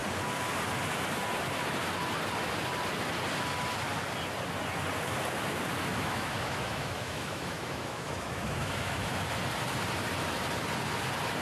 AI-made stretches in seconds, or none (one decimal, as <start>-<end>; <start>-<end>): 5.9-9.2